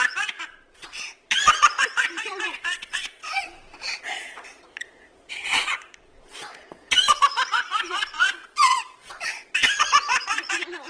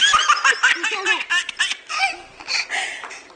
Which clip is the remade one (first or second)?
first